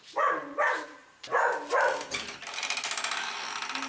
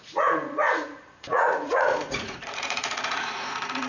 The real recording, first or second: first